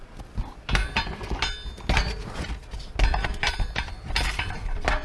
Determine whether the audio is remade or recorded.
recorded